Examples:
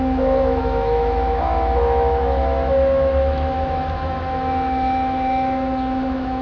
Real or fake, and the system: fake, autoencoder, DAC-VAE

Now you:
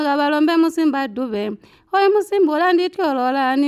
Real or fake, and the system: real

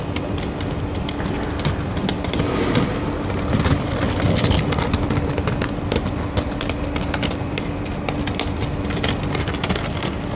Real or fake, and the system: real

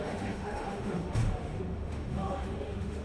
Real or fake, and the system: fake, autoencoder, DAC-VAE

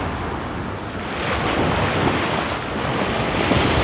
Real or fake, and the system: real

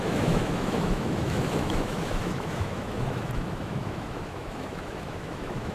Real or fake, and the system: fake, autoencoder, DAC-VAE